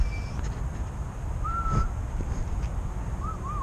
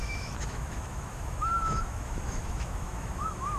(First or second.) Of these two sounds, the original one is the first